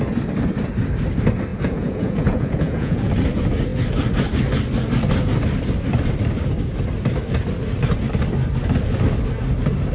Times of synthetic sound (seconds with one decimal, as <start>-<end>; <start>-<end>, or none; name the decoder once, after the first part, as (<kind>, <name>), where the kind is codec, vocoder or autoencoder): 1.5-3.1 (vocoder, Vocos)